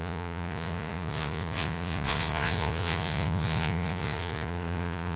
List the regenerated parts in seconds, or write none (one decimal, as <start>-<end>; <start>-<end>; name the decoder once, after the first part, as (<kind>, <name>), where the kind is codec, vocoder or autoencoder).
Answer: 0.0-5.2 (vocoder, Vocos)